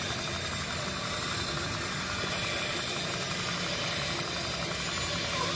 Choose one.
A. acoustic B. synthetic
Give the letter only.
A